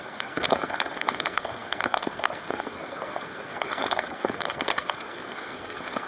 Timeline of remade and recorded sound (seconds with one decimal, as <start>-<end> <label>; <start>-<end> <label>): 0.0-6.1 remade